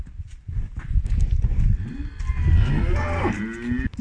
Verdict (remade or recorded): recorded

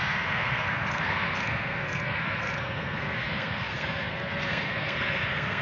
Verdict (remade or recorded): remade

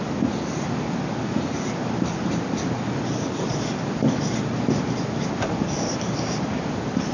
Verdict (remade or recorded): recorded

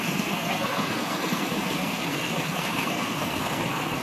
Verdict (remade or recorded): remade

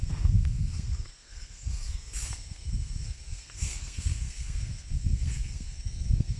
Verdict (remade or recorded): remade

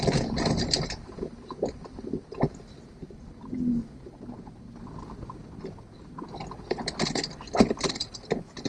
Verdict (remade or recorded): recorded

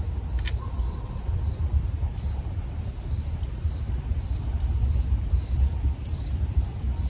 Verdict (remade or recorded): recorded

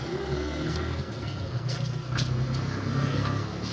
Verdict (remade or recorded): remade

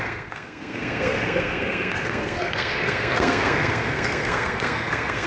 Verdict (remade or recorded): remade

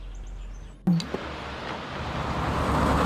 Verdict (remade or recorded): recorded